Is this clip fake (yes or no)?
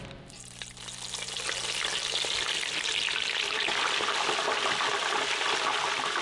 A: no